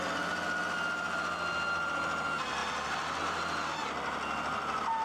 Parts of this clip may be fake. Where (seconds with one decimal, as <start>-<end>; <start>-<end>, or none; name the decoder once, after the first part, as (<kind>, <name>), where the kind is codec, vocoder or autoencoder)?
2.6-3.2 (vocoder, BigVGAN v2); 3.8-4.4